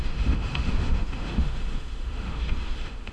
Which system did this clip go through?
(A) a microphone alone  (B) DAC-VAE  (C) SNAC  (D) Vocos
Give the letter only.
B